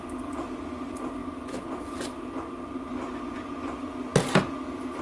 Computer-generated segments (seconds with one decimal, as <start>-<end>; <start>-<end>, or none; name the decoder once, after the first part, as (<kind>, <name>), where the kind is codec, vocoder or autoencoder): none